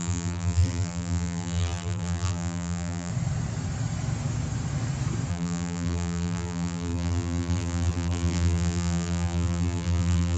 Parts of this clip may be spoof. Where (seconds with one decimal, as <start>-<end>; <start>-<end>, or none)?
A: 0.0-3.1; 5.3-10.4